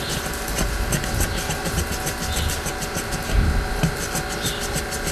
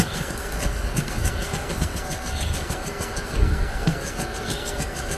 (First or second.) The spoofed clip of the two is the second